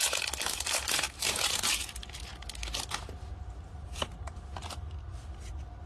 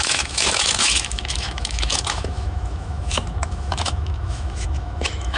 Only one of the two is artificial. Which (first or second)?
second